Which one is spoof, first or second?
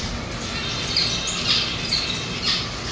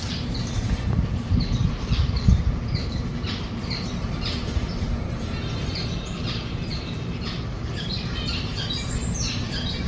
second